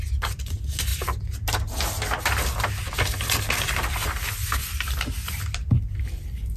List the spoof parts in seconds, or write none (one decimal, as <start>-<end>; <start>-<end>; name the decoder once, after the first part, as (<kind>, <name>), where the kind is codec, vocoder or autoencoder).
none

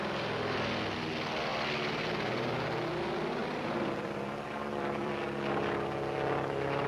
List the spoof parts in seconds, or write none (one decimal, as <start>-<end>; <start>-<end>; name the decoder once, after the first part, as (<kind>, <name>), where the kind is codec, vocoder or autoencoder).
3.4-5.1 (vocoder, BigVGAN v2)

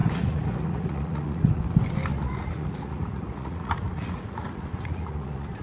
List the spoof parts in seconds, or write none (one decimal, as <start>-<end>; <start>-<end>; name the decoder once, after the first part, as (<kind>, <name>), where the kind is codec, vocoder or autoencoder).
0.0-1.6 (vocoder, Vocos); 2.1-5.6

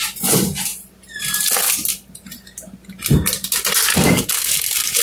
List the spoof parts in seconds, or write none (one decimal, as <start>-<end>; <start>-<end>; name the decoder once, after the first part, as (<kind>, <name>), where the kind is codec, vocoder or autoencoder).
3.9-5.0 (codec, DAC)

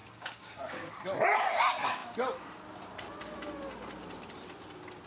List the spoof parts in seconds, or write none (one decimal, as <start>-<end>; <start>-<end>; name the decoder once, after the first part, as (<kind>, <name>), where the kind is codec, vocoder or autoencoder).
0.0-0.9 (codec, DAC)

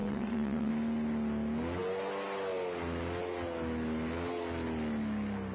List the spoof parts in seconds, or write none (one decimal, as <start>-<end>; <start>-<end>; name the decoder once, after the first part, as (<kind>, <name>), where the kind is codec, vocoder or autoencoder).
0.0-0.7 (vocoder, WaveNeXt)

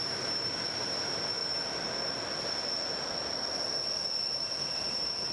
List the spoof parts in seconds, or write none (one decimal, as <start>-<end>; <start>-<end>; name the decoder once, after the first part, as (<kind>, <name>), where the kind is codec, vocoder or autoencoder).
0.0-1.4 (vocoder, BigVGAN v2); 4.6-5.3

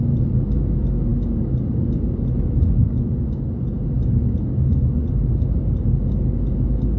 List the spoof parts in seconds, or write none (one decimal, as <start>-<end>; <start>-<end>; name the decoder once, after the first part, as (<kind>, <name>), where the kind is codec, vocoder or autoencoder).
none